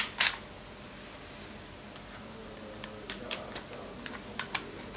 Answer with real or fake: real